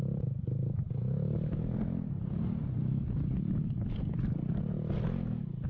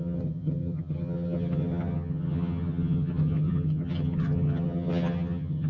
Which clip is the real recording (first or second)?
first